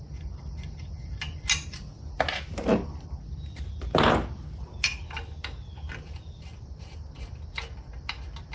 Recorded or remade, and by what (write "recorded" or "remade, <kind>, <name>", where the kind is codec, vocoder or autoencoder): recorded